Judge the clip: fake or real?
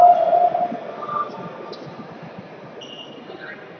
real